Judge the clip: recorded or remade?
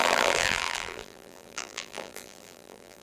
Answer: remade